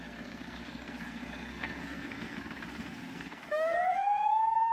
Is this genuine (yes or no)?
no